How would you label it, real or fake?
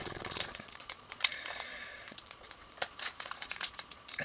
fake